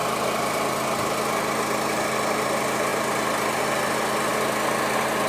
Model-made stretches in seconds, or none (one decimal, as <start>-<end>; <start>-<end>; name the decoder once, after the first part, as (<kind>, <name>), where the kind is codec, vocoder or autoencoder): none